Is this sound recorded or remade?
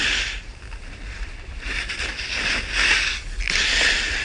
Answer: recorded